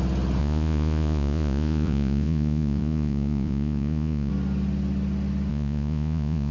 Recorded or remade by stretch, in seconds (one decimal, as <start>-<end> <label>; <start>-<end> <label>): 0.0-0.4 recorded; 0.4-4.3 remade; 4.3-5.5 recorded; 5.5-6.5 remade